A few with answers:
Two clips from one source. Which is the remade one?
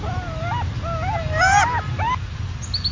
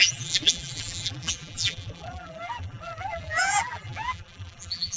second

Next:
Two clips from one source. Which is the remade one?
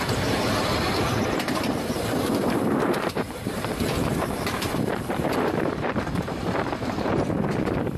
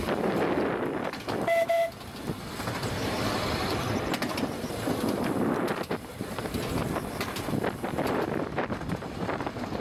first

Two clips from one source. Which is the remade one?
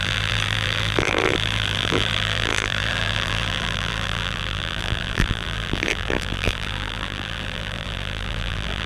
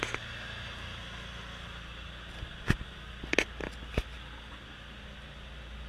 first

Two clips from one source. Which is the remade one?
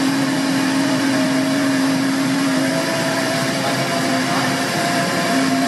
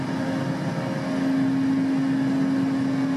first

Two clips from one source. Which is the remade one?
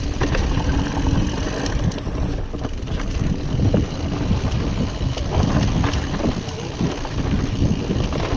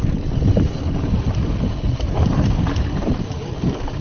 second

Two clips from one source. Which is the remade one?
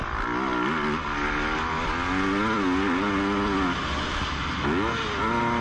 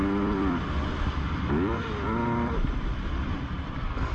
second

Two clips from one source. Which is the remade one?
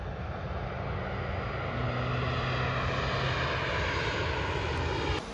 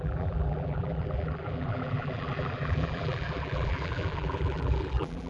second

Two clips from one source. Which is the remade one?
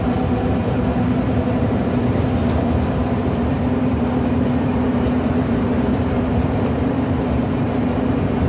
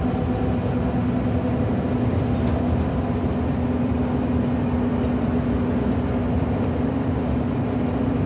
first